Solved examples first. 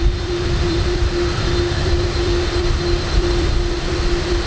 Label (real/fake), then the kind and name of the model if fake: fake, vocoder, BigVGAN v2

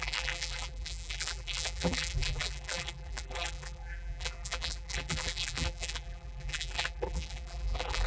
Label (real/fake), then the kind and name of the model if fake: fake, vocoder, BigVGAN v2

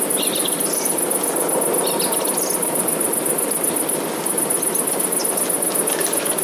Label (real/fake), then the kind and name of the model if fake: real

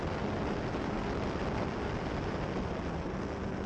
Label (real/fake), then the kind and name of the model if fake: real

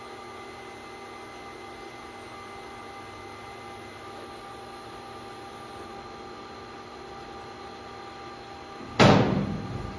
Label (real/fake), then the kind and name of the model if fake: real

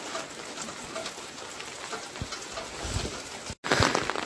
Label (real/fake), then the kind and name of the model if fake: real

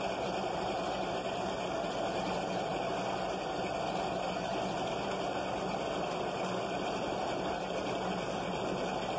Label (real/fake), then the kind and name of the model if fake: fake, vocoder, BigVGAN v2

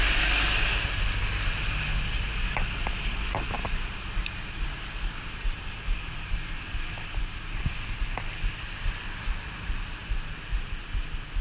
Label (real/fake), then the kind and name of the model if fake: real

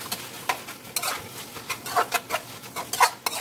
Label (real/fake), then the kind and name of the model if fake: real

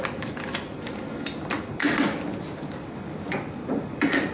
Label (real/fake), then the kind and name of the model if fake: real